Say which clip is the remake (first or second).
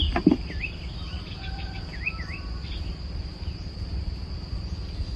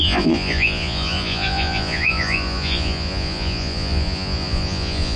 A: second